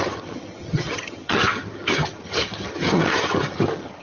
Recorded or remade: remade